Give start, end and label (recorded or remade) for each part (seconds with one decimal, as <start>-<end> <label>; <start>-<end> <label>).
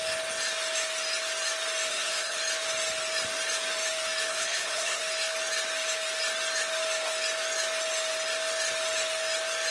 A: 0.0-1.9 recorded; 1.9-2.4 remade; 2.4-4.3 recorded; 4.3-5.0 remade; 5.0-9.7 recorded